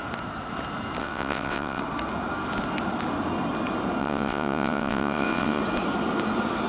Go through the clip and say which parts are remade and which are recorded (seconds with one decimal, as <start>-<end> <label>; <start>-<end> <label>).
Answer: 0.0-1.0 recorded; 1.0-1.8 remade; 1.8-4.0 recorded; 4.0-5.6 remade; 5.6-6.7 recorded